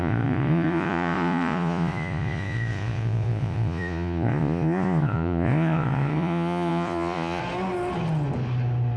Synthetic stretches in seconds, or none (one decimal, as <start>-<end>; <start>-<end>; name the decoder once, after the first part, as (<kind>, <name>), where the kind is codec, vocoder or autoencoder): 0.0-7.4 (vocoder, Vocos)